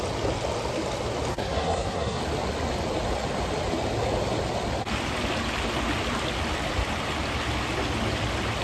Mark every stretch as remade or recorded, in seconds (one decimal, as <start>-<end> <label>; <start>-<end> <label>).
0.0-1.3 recorded; 1.3-2.2 remade; 2.2-8.6 recorded